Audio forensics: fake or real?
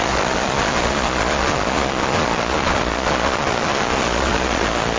fake